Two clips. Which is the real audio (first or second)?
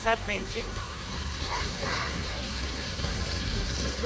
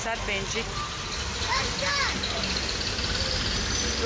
second